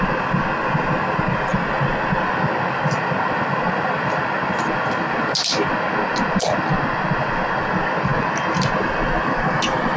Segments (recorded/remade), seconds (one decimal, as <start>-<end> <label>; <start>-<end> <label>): 0.0-10.0 recorded